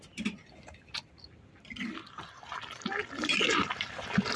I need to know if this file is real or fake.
real